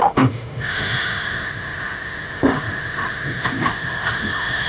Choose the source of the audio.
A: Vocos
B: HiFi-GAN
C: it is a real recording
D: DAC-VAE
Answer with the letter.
D